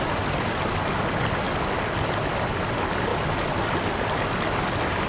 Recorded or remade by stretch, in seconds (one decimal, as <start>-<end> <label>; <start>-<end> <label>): 0.0-3.1 recorded; 3.1-3.8 remade; 3.8-5.1 recorded